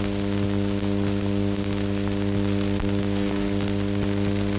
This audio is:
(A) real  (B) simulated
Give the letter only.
A